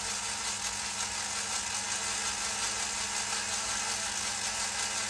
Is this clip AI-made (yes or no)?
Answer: no